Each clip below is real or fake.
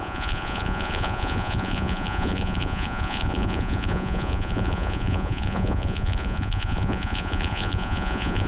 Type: fake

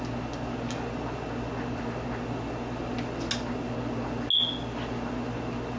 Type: real